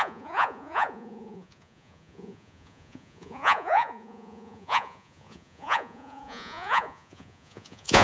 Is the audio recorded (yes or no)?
no